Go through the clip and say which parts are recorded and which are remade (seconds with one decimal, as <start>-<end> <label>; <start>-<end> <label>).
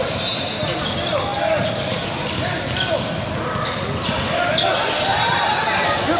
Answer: 0.0-6.2 recorded